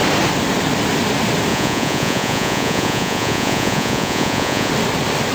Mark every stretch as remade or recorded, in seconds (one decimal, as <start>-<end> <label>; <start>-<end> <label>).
0.0-1.5 recorded; 1.5-4.7 remade; 4.7-5.3 recorded